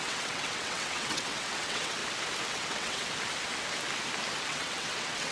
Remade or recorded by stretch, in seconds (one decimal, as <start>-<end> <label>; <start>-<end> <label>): 0.0-2.0 remade; 2.0-2.5 recorded; 2.5-3.0 remade; 3.0-4.4 recorded; 4.4-5.3 remade